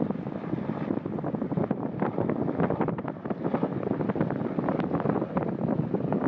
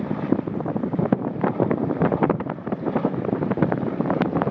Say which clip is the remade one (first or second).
second